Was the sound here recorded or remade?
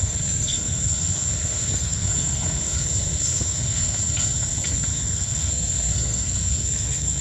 remade